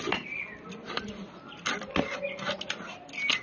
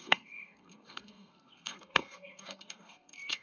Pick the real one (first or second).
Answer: first